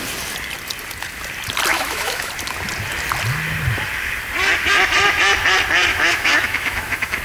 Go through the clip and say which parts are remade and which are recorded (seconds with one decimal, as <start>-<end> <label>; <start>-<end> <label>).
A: 0.0-1.7 recorded; 1.7-2.3 remade; 2.3-5.9 recorded; 5.9-7.2 remade